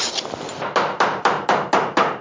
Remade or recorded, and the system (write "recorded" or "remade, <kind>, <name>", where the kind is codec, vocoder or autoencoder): recorded